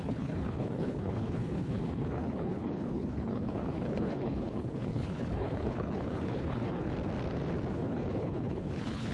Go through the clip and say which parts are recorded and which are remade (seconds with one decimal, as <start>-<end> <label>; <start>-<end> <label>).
0.0-6.9 remade; 6.9-7.7 recorded; 7.7-9.1 remade